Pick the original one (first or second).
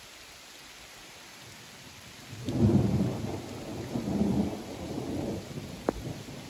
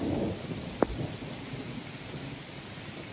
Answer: first